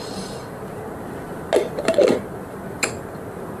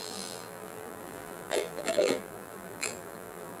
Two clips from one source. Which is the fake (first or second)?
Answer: second